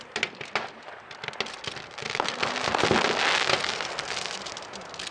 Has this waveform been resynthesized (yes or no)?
no